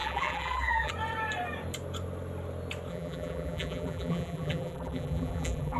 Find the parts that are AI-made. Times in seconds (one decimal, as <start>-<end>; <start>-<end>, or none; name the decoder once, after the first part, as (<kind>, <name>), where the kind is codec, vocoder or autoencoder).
0.0-0.9 (vocoder, BigVGAN v2); 2.9-5.8